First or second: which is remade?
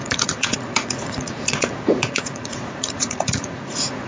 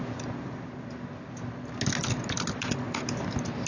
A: first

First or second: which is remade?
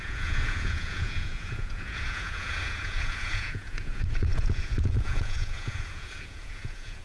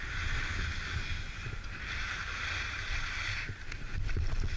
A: first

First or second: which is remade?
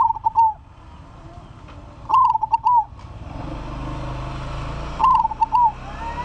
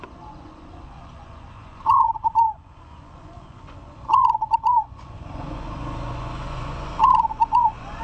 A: second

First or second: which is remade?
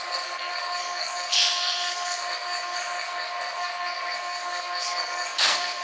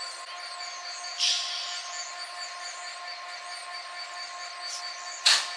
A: first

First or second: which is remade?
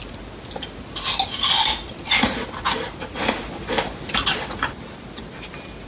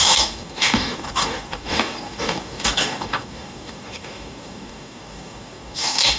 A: second